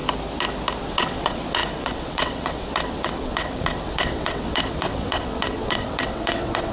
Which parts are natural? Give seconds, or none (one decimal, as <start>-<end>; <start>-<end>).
0.0-0.8